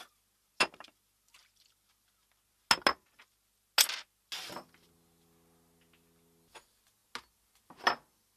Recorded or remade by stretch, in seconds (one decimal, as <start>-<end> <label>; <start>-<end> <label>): 0.0-8.4 recorded